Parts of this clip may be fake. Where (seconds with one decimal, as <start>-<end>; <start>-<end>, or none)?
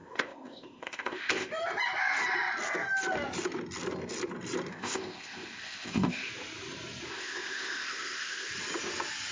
0.0-1.5; 4.7-6.3; 7.1-8.5